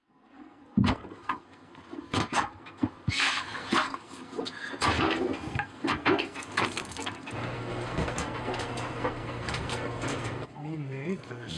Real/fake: fake